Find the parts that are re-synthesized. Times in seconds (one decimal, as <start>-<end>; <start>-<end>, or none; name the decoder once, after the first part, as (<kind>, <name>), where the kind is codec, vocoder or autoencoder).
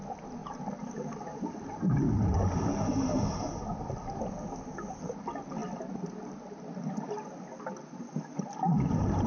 none